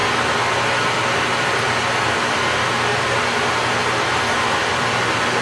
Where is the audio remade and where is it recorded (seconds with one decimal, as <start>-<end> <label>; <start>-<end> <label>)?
0.0-5.4 recorded